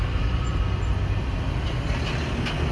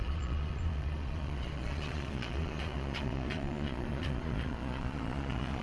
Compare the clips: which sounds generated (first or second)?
second